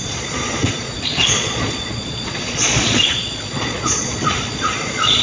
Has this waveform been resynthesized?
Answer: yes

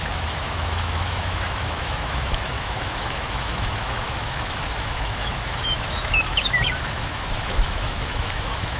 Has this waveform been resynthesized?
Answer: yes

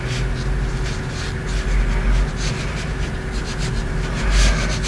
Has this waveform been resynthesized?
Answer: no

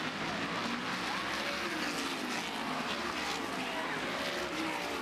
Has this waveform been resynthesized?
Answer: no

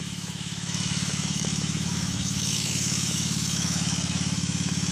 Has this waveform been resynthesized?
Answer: yes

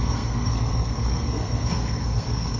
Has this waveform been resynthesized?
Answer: yes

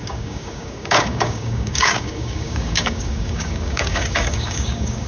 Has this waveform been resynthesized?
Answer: yes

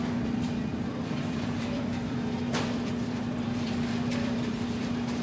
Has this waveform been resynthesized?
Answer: yes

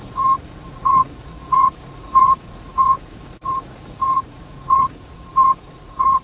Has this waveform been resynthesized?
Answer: yes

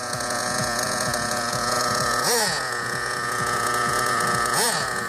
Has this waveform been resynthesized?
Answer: yes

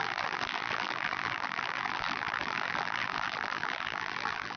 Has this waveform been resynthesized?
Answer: yes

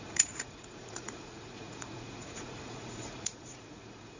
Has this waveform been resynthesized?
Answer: yes